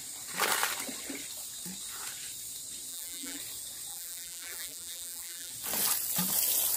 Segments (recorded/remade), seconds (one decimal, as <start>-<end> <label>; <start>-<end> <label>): 0.0-2.9 recorded; 2.9-3.4 remade; 3.4-3.9 recorded; 3.9-5.5 remade; 5.5-6.8 recorded